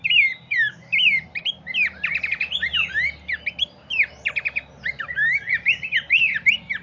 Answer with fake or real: real